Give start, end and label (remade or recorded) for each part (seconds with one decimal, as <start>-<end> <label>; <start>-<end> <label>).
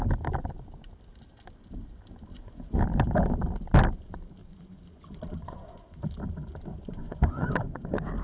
0.0-2.3 recorded; 2.3-2.8 remade; 2.8-4.4 recorded; 4.4-5.8 remade; 5.8-6.7 recorded; 6.7-7.5 remade; 7.5-8.2 recorded